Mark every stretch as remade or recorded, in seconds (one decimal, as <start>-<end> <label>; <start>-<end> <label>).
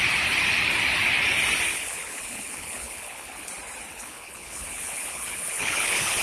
0.0-1.7 recorded; 1.7-3.5 remade; 3.5-3.9 recorded; 3.9-6.2 remade